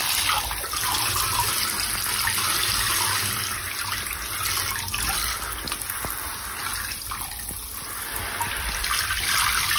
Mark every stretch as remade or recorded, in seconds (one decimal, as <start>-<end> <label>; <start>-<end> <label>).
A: 0.0-9.8 recorded